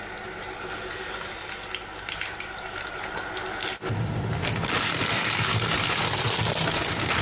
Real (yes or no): yes